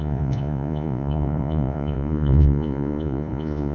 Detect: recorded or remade remade